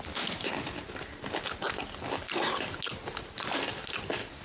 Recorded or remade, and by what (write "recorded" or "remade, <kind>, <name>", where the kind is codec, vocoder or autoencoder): recorded